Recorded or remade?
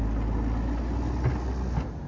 recorded